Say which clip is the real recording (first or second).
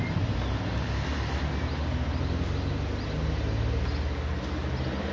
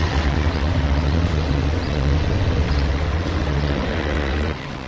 first